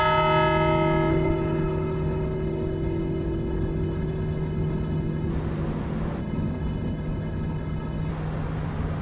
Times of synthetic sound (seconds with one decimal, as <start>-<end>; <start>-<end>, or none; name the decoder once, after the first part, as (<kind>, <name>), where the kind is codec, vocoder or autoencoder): 1.1-5.3 (codec, HILCodec); 6.2-8.1